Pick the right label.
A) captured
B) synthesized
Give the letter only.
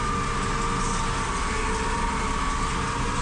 A